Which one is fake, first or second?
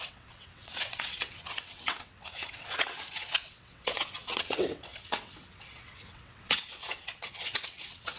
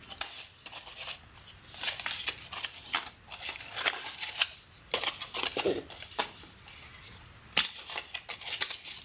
first